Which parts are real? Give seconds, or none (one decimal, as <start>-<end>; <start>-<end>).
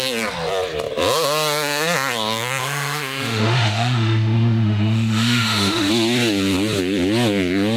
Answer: 0.0-2.6; 5.9-7.8